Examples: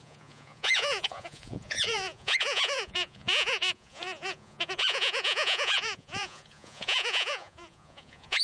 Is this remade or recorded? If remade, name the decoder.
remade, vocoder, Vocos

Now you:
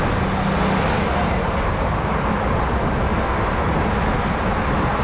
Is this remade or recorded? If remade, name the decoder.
recorded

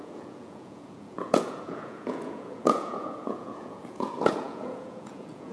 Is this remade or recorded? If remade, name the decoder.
remade, vocoder, Vocos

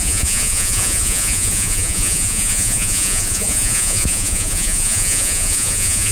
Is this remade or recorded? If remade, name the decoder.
remade, vocoder, Vocos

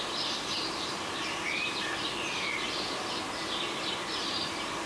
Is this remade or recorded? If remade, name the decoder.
recorded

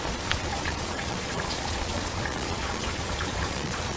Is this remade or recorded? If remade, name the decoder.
remade, vocoder, Vocos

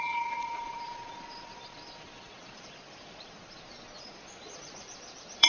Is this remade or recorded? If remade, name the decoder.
remade, vocoder, Vocos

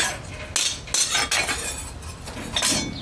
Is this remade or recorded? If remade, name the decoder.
recorded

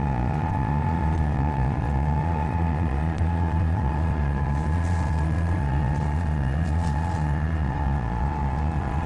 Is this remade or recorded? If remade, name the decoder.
remade, vocoder, Vocos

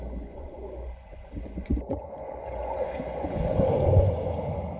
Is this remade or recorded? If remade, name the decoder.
remade, vocoder, Vocos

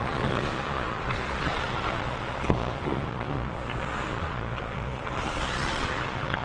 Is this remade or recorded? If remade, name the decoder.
remade, vocoder, Vocos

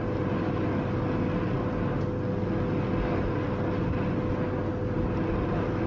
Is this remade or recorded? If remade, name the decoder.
recorded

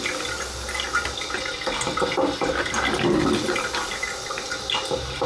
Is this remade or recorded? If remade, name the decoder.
recorded